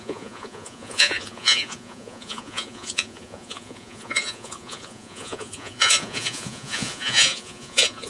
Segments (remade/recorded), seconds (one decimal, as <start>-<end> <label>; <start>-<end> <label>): 0.0-8.1 remade